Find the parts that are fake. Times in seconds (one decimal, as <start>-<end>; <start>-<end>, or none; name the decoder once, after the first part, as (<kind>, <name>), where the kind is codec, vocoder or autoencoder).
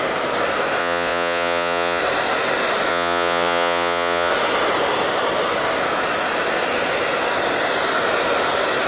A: 0.8-2.0 (vocoder, Vocos); 2.9-4.3